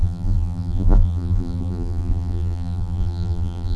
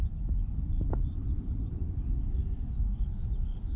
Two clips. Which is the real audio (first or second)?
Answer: second